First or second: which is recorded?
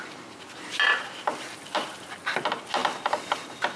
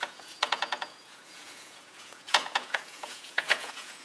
first